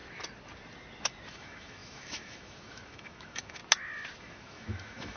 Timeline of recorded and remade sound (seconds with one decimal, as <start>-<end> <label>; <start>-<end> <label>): 0.0-1.3 recorded; 1.3-3.6 remade; 3.6-4.2 recorded; 4.2-5.2 remade